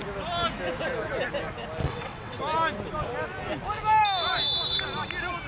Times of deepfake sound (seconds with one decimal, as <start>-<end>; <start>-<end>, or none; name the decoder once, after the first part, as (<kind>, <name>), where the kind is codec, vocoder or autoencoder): 1.8-2.4 (vocoder, WaveNeXt)